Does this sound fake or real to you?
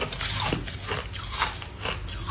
real